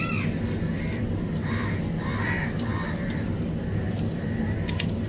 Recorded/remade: remade